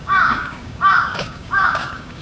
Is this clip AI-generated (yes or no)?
yes